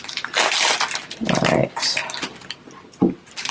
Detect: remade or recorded recorded